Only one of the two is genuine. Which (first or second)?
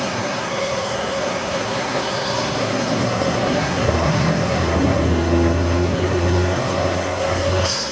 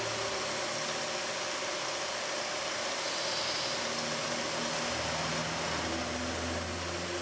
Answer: second